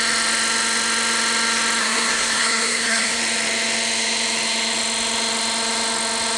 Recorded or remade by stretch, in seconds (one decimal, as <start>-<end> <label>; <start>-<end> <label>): 0.0-1.8 recorded; 1.8-3.2 remade; 3.2-6.4 recorded